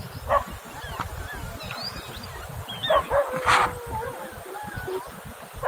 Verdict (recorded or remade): recorded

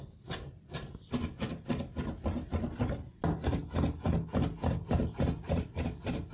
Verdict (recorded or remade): recorded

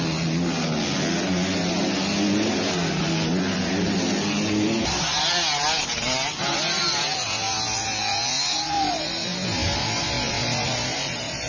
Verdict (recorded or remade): recorded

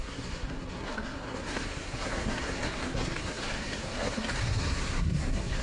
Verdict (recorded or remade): remade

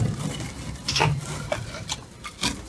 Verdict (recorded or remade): recorded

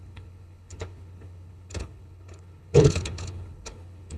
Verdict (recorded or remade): remade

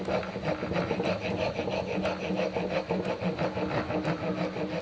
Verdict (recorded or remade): recorded